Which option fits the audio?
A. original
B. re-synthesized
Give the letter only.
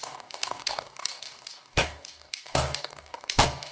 B